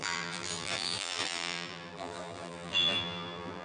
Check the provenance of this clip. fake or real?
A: fake